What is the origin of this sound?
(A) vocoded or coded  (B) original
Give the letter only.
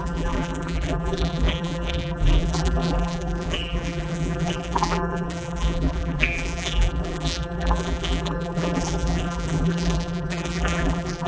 A